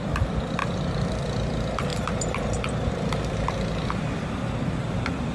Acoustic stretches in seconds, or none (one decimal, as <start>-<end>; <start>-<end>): none